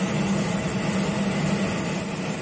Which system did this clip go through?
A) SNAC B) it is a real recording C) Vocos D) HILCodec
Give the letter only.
B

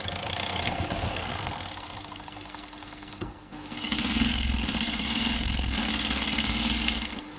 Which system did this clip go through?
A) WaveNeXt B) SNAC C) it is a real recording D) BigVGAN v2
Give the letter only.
B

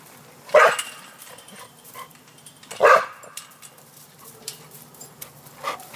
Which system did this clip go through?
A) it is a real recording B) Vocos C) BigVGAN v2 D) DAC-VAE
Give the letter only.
C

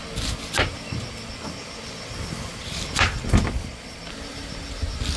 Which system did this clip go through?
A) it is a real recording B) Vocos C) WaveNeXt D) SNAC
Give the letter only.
A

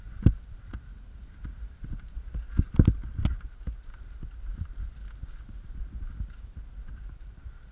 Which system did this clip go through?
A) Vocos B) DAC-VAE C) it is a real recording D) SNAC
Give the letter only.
C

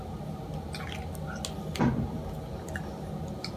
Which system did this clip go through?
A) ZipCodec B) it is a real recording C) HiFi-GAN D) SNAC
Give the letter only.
B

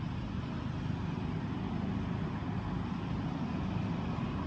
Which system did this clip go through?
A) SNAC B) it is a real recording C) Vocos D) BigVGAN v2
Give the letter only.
B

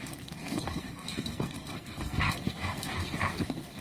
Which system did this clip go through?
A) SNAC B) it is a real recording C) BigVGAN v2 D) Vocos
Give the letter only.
A